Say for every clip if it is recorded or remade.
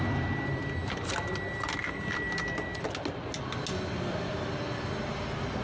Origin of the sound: recorded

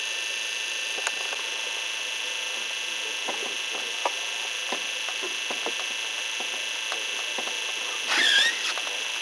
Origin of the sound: recorded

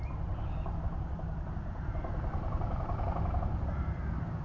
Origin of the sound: remade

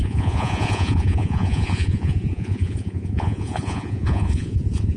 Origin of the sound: remade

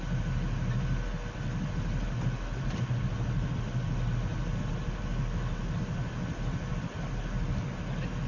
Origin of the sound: recorded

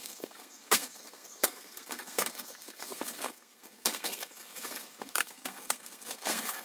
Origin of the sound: remade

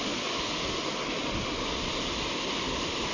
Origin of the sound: recorded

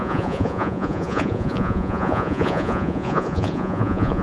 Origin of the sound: remade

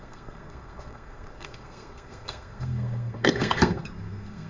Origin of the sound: remade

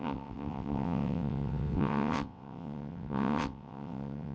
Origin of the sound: remade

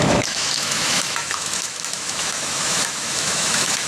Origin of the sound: remade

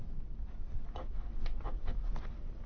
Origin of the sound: recorded